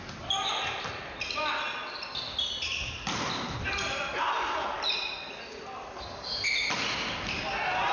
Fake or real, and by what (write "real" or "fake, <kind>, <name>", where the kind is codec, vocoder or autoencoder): real